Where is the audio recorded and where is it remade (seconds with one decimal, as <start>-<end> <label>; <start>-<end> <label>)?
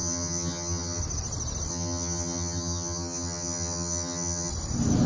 0.0-1.0 remade; 1.0-1.7 recorded; 1.7-4.5 remade; 4.5-5.1 recorded